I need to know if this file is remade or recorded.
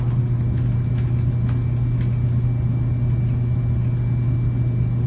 recorded